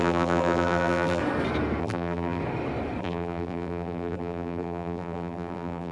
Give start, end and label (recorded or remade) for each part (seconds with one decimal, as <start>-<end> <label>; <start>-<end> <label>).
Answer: 0.0-1.2 remade; 1.2-1.8 recorded; 1.8-2.4 remade; 2.4-3.0 recorded; 3.0-5.9 remade